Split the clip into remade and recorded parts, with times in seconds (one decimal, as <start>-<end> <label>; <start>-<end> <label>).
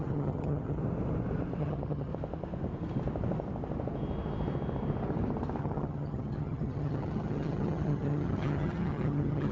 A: 0.0-0.8 remade; 0.8-1.6 recorded; 1.6-2.1 remade; 2.1-5.6 recorded; 5.6-9.5 remade